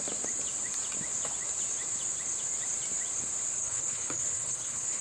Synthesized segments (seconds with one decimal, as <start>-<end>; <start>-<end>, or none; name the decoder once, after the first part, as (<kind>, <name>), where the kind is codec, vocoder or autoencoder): 3.6-5.0 (codec, HILCodec)